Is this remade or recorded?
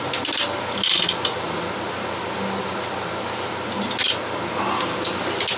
recorded